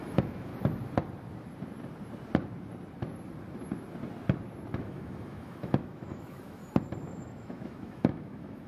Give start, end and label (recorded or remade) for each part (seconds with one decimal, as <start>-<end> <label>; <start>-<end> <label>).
0.0-0.5 remade; 0.5-4.7 recorded; 4.7-6.6 remade; 6.6-7.1 recorded; 7.1-8.7 remade